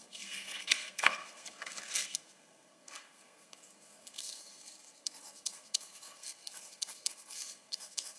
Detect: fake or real fake